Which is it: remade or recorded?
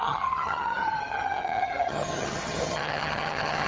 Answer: remade